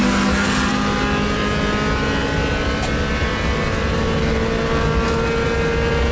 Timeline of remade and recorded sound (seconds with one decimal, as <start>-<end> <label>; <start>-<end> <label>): 0.0-6.1 recorded